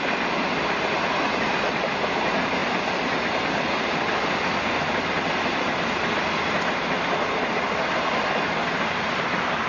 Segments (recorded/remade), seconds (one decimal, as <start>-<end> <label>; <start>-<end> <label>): 0.0-9.7 recorded